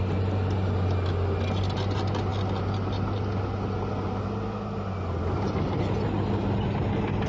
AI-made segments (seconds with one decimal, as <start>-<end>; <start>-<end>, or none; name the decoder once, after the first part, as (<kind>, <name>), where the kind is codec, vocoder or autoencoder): none